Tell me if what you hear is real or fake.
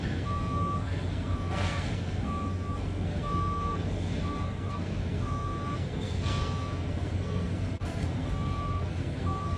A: fake